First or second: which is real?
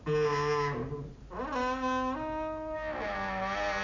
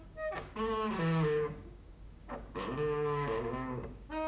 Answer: first